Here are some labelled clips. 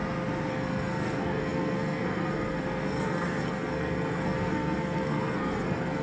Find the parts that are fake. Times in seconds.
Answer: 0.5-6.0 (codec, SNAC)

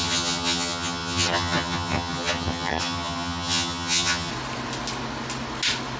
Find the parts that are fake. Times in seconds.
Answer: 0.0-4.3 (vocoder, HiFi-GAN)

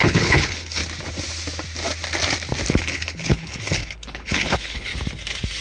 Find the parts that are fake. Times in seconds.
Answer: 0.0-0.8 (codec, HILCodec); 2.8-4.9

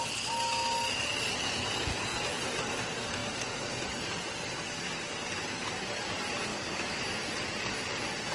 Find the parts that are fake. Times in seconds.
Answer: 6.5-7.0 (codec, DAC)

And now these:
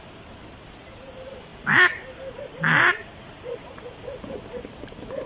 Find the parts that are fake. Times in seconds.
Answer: 1.5-4.3 (vocoder, BigVGAN v2)